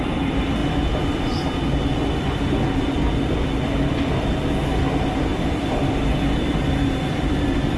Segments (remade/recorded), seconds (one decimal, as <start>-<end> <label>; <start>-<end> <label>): 0.0-5.3 recorded; 5.3-5.9 remade; 5.9-7.8 recorded